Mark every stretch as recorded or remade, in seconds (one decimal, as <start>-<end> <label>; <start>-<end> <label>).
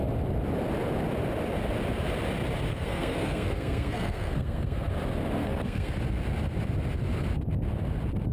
0.0-2.7 recorded; 2.7-4.9 remade; 4.9-5.4 recorded; 5.4-6.0 remade; 6.0-8.3 recorded